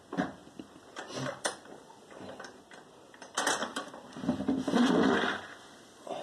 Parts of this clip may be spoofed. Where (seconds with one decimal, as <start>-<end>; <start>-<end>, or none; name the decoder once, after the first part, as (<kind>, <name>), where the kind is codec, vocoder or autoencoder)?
0.0-6.2 (vocoder, BigVGAN v2)